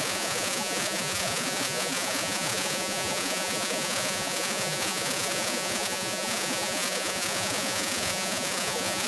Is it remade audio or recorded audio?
remade